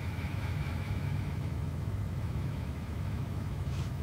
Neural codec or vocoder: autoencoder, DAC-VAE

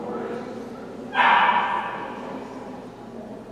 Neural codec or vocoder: none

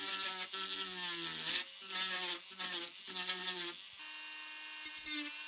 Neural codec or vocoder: none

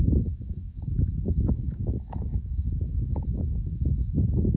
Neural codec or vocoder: autoencoder, DAC-VAE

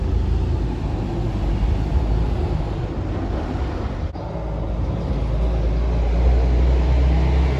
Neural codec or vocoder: none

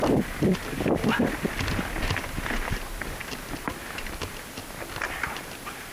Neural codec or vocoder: none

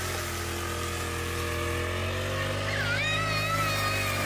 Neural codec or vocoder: none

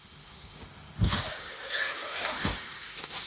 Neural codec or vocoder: autoencoder, DAC-VAE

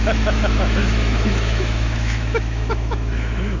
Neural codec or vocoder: autoencoder, DAC-VAE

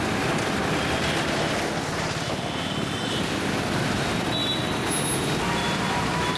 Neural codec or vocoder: none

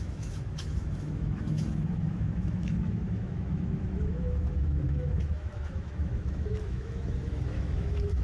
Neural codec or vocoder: autoencoder, DAC-VAE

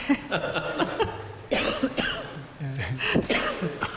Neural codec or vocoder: none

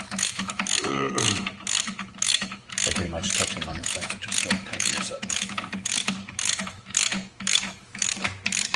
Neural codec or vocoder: autoencoder, DAC-VAE